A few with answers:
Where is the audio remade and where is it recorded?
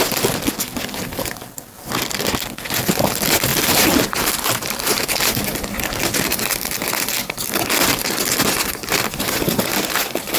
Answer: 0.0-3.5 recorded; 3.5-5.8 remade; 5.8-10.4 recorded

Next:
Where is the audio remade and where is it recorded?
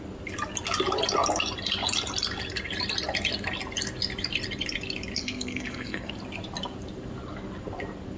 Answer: 0.0-5.2 recorded; 5.2-6.1 remade; 6.1-8.2 recorded